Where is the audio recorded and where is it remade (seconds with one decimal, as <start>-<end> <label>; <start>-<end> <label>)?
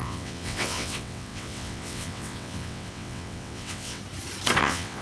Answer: 0.0-4.0 remade; 4.0-4.6 recorded; 4.6-5.0 remade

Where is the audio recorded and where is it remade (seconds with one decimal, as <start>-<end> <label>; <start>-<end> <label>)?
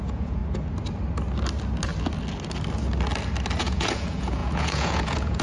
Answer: 0.0-0.4 remade; 0.4-3.6 recorded; 3.6-5.4 remade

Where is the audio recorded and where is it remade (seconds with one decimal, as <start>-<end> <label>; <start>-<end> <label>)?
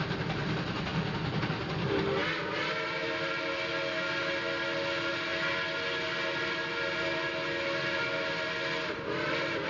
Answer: 0.0-9.7 recorded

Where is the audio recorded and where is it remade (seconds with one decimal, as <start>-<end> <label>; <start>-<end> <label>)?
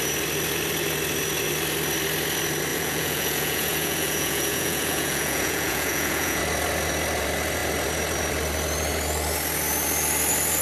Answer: 0.0-2.7 recorded; 2.7-6.4 remade; 6.4-10.6 recorded